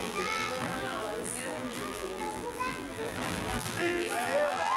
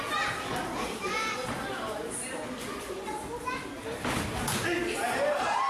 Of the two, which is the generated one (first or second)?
first